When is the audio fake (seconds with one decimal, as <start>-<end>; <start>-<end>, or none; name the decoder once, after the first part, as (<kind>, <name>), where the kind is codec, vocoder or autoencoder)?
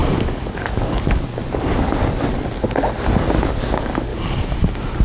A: 0.0-1.4 (codec, DAC); 3.5-4.1